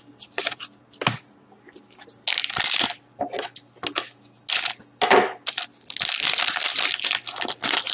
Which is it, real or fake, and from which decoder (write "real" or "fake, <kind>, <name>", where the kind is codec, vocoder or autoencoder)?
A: real